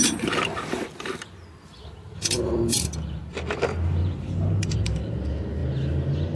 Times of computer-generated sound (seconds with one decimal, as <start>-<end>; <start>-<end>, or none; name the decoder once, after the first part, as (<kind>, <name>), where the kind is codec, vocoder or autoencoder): 0.0-3.3 (vocoder, BigVGAN v2); 4.0-4.8